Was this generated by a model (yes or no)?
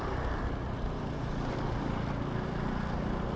no